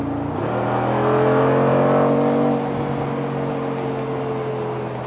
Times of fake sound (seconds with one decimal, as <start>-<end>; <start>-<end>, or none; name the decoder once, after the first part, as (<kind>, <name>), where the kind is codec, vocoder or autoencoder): none